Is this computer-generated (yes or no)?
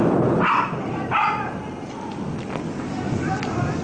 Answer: no